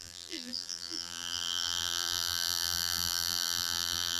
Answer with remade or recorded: remade